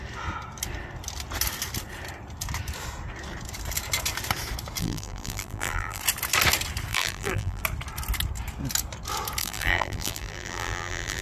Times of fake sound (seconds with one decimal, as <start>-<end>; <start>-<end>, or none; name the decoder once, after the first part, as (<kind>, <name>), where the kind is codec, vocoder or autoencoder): 4.8-6.0 (vocoder, BigVGAN v2); 6.9-7.6; 9.4-11.2